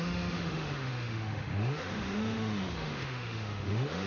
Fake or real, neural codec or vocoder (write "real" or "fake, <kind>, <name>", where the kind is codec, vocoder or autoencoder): fake, autoencoder, DAC-VAE